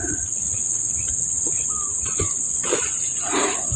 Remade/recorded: recorded